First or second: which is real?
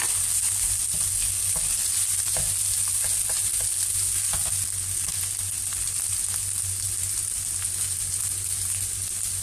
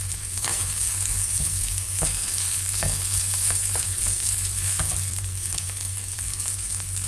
first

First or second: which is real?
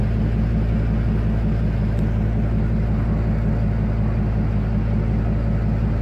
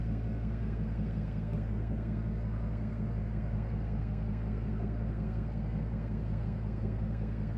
first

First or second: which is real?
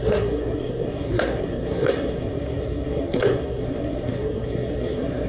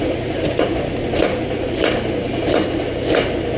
second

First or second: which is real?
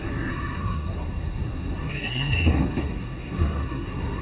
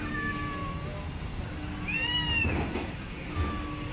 second